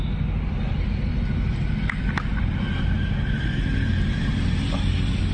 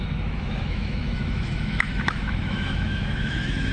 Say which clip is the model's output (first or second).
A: second